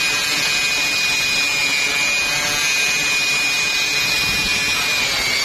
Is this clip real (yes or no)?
yes